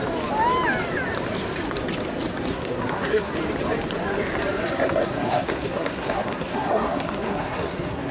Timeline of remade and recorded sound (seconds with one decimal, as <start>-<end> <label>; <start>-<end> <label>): 0.0-2.5 recorded; 2.5-3.3 remade; 3.3-4.6 recorded; 4.6-8.1 remade